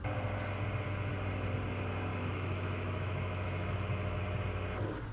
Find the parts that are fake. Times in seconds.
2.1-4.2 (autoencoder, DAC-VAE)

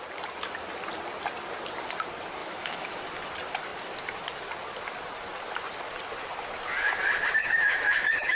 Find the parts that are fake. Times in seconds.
2.4-3.0 (autoencoder, DAC-VAE); 7.4-8.4

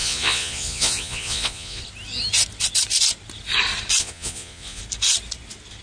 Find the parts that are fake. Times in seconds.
0.0-1.8 (vocoder, Vocos); 4.0-4.8

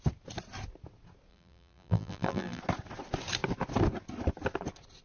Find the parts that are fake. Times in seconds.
1.3-2.6 (vocoder, BigVGAN v2)

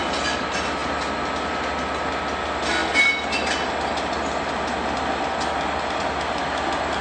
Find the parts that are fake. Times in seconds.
none

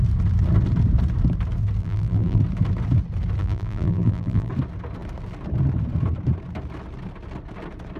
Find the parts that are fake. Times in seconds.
1.8-2.4 (vocoder, BigVGAN v2); 3.4-4.5

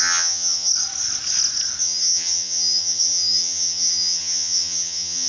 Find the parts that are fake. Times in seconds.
0.0-0.7 (vocoder, HiFi-GAN); 1.8-5.3

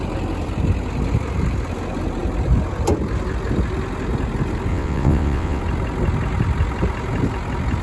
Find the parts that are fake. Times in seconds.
4.7-5.6 (vocoder, WaveNeXt)